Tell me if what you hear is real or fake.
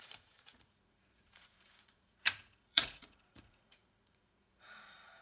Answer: fake